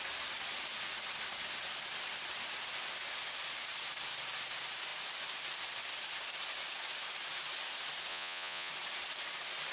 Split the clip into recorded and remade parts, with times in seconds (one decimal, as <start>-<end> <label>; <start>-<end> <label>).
0.0-8.1 recorded; 8.1-8.7 remade; 8.7-9.7 recorded